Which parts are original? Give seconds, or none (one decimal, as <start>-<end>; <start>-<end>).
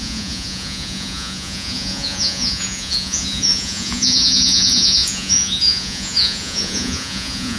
none